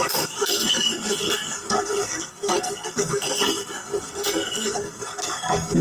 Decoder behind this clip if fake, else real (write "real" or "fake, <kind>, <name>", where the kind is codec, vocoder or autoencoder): fake, codec, SNAC